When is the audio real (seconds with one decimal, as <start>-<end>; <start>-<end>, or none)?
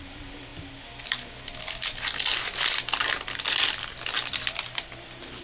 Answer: 0.0-5.4